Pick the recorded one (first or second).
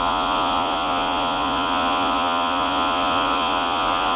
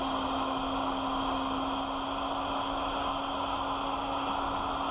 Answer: second